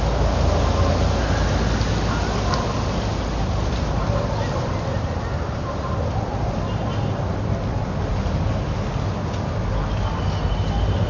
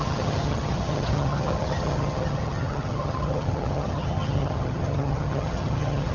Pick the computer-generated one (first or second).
second